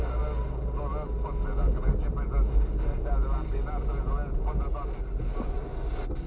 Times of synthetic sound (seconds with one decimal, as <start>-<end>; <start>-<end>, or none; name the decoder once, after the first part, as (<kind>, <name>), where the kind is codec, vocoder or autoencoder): none